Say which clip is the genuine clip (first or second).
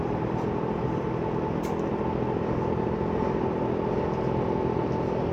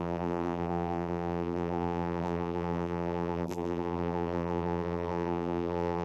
first